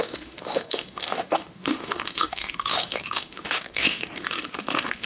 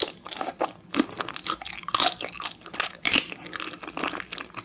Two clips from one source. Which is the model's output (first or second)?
first